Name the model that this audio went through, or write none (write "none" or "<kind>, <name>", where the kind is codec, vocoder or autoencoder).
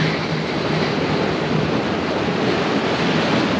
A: none